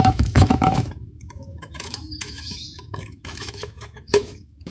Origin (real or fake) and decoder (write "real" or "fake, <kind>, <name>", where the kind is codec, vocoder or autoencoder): fake, autoencoder, DAC-VAE